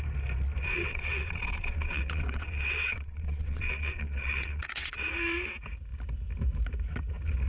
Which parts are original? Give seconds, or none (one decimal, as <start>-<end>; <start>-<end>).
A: 0.0-0.6; 5.1-7.5